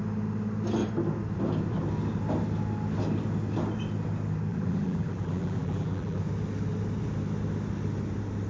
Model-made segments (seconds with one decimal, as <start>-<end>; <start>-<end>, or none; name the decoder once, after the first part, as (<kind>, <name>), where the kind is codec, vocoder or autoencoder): 4.5-6.2 (vocoder, BigVGAN v2)